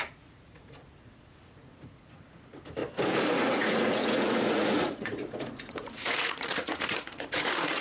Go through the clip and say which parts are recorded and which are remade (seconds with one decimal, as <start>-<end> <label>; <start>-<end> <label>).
0.0-2.8 remade; 2.8-3.4 recorded; 3.4-7.8 remade